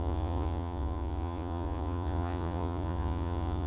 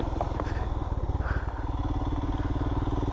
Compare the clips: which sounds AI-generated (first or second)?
first